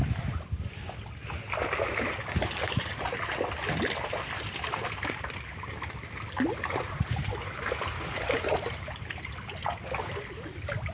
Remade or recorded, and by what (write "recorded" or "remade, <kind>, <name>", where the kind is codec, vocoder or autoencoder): recorded